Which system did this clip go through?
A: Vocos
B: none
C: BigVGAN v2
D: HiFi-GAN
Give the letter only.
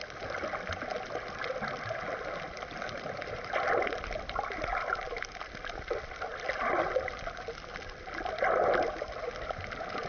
B